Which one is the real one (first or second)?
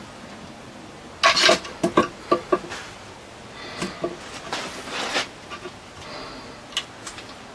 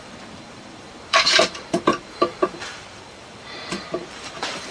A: first